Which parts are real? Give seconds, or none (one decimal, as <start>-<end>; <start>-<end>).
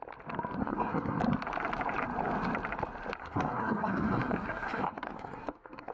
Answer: 0.0-0.6; 1.2-3.2